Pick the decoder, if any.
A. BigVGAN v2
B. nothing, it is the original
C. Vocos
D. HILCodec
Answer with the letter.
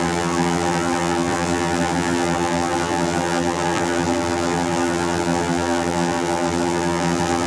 A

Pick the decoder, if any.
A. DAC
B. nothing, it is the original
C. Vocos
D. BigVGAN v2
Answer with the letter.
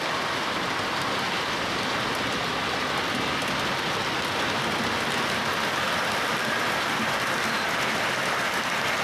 B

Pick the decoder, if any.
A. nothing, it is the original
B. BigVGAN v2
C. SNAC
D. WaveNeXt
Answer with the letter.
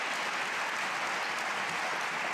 A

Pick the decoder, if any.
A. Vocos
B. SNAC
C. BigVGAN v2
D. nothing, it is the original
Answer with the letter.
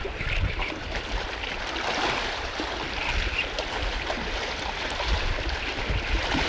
C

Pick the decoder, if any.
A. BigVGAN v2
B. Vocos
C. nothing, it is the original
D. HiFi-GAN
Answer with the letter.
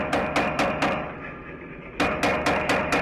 C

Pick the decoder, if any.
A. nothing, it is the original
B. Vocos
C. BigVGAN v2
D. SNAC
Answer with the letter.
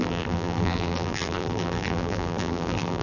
C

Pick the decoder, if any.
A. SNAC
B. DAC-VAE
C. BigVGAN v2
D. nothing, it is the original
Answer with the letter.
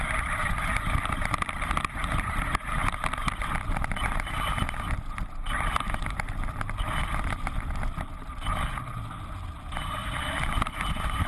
D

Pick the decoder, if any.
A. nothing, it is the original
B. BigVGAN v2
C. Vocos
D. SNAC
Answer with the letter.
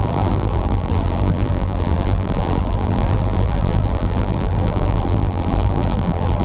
B